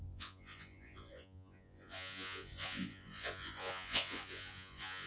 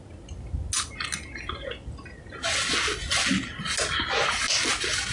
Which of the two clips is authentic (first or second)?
second